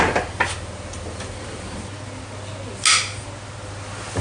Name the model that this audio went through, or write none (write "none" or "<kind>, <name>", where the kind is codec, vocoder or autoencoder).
none